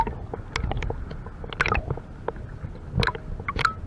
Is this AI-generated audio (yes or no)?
no